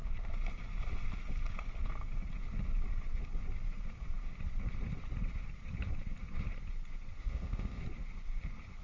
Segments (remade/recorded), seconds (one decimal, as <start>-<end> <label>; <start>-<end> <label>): 0.0-7.2 recorded; 7.2-7.8 remade; 7.8-8.8 recorded